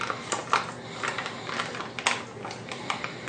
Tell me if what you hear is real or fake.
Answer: real